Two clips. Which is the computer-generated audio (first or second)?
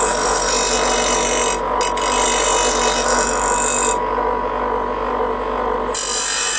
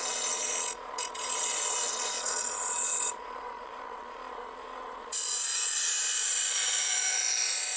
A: second